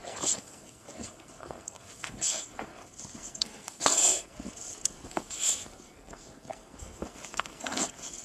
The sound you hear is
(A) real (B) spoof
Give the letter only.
B